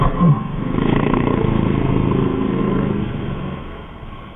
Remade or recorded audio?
remade